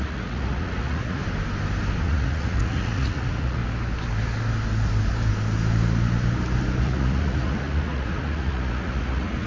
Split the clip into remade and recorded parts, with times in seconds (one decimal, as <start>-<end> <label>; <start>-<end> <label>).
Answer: 0.0-1.2 remade; 1.2-2.0 recorded; 2.0-3.6 remade; 3.6-6.8 recorded; 6.8-9.5 remade